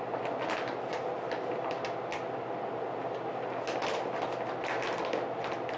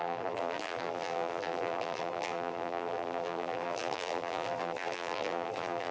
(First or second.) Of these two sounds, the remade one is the second